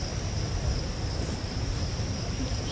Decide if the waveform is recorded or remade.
recorded